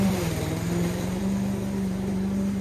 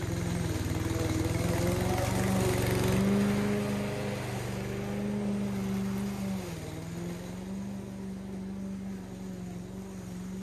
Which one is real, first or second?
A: second